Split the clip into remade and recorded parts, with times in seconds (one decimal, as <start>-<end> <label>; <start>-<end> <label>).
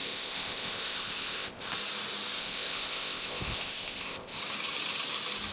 0.0-1.7 remade; 1.7-2.4 recorded; 2.4-4.4 remade; 4.4-5.5 recorded